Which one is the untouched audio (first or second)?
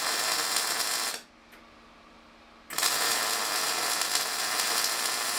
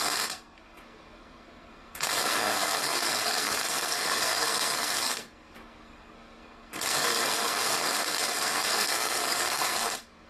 first